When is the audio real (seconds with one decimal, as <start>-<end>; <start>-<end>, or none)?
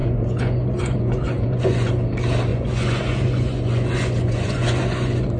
1.9-2.5